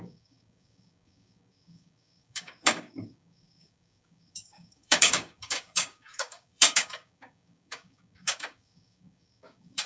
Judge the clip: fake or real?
fake